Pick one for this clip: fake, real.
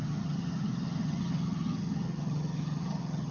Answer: fake